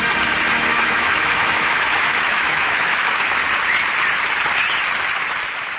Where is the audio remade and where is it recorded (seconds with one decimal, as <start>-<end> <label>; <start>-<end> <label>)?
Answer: 0.0-0.7 recorded; 0.7-3.4 remade; 3.4-5.8 recorded